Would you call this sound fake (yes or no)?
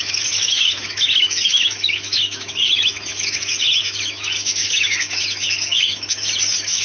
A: yes